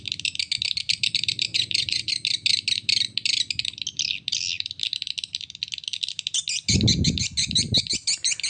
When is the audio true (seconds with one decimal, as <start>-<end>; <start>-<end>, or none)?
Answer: 0.0-1.5; 2.1-8.5